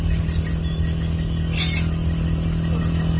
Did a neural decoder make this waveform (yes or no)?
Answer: no